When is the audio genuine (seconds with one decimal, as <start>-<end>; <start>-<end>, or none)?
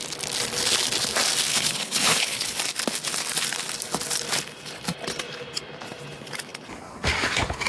0.0-1.5; 2.6-7.7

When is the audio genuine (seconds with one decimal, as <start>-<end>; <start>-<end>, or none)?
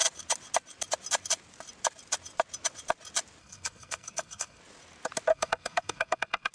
0.0-3.4; 4.6-5.3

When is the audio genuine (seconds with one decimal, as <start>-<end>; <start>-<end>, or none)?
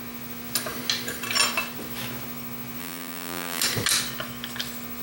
0.0-2.8; 3.6-5.0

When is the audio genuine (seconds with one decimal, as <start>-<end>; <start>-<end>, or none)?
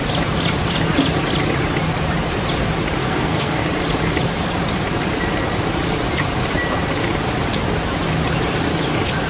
0.0-3.0; 3.7-9.3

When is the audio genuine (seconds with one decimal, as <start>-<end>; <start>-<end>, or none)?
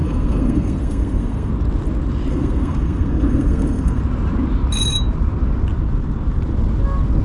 1.5-2.3; 4.0-7.2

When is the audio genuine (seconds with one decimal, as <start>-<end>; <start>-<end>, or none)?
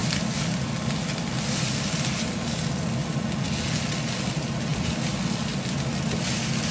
0.0-6.7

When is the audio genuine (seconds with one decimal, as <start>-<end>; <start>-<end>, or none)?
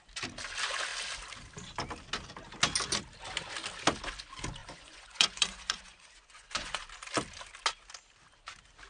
0.0-4.6; 6.8-8.9